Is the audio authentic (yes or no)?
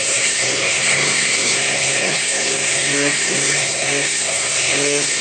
no